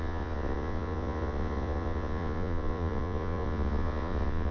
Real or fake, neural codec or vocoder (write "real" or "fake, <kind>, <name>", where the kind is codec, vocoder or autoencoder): fake, vocoder, Vocos